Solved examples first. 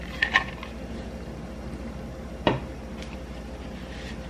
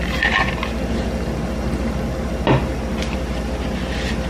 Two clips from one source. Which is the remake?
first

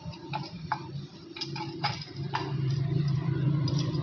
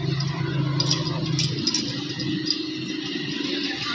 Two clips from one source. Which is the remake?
first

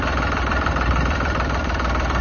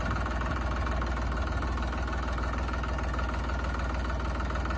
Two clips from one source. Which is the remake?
first